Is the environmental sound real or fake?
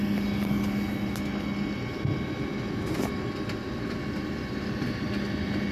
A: real